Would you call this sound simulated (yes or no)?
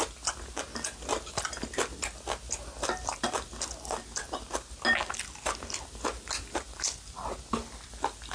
no